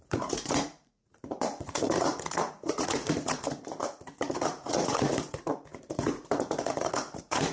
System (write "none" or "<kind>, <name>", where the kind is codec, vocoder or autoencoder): vocoder, Vocos